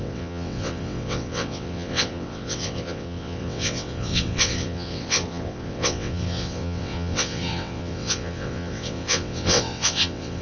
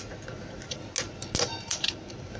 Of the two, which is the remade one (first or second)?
first